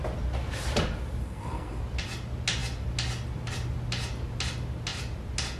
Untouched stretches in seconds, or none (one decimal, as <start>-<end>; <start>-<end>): 0.0-1.2; 1.8-5.6